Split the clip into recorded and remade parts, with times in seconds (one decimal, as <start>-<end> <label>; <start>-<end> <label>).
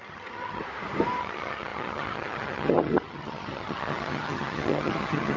0.0-0.6 remade; 0.6-1.2 recorded; 1.2-5.4 remade